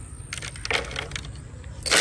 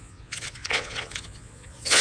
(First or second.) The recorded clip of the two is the first